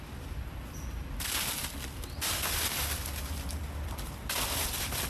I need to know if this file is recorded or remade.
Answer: recorded